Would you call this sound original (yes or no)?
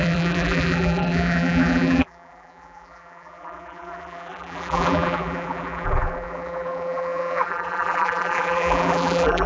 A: no